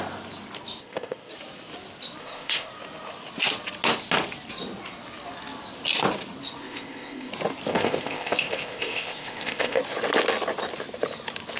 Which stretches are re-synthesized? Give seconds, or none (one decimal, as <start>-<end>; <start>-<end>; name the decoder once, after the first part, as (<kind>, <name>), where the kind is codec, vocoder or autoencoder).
0.8-1.3 (codec, ZipCodec); 2.2-2.7; 6.6-7.3; 7.7-9.8